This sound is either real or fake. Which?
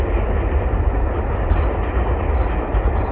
real